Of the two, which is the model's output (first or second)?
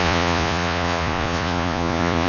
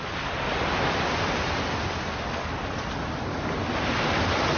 first